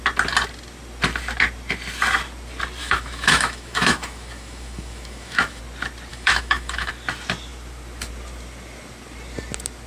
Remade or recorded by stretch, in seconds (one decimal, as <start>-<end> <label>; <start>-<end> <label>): 0.0-2.8 recorded; 2.8-5.6 remade; 5.6-6.1 recorded; 6.1-6.9 remade; 6.9-9.9 recorded